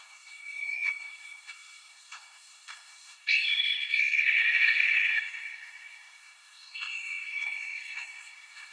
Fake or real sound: fake